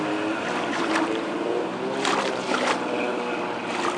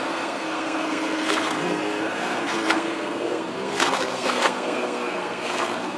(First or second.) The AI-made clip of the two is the second